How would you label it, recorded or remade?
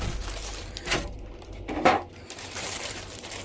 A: remade